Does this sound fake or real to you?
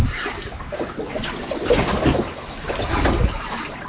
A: real